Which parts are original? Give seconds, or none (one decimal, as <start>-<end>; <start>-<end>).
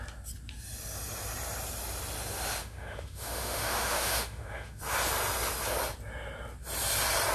0.0-2.6; 4.8-7.3